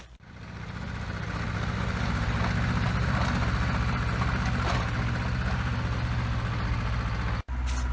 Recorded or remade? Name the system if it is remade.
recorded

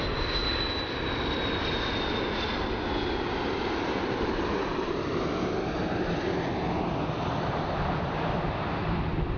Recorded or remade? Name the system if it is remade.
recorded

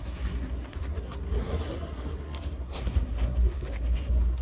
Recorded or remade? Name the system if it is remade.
remade, codec, SNAC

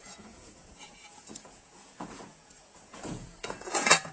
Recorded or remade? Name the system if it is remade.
remade, vocoder, Vocos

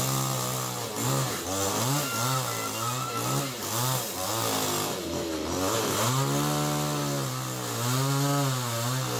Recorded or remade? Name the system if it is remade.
recorded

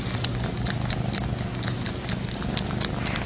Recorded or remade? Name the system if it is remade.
recorded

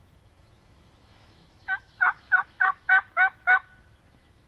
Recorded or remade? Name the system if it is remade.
remade, autoencoder, DAC-VAE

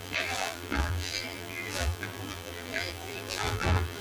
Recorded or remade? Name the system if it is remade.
remade, vocoder, BigVGAN v2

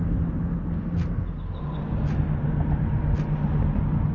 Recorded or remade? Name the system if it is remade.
recorded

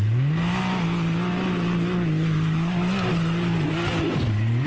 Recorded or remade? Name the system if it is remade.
recorded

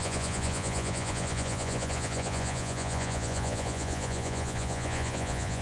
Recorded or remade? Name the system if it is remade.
remade, vocoder, Vocos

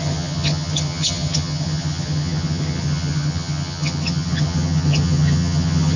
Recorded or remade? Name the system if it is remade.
remade, vocoder, HiFi-GAN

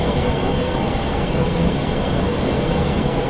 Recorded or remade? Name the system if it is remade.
remade, codec, SNAC